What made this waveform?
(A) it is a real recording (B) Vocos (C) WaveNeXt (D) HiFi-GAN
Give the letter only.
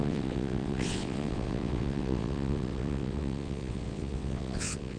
C